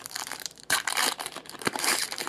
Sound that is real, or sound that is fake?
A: fake